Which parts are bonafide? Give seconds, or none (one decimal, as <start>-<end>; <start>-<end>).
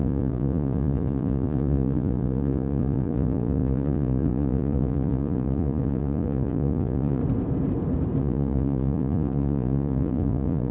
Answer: 7.2-8.2